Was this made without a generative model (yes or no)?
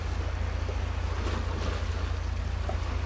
yes